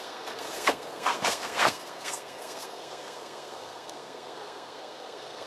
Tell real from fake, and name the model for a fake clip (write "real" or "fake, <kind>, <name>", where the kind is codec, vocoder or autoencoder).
fake, codec, SNAC